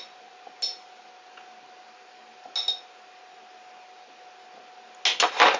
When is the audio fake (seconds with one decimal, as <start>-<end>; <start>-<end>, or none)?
none

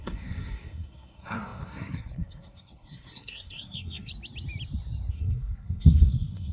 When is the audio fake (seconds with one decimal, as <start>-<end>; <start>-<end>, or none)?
0.0-4.1; 5.1-6.5

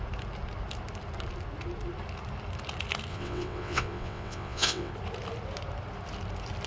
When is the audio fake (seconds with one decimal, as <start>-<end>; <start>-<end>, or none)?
3.1-4.9

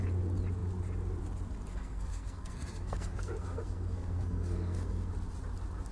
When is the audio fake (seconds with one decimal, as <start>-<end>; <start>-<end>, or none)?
1.7-5.1

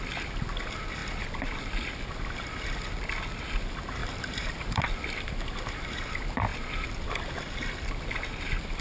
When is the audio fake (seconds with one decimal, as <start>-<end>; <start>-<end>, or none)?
4.0-4.8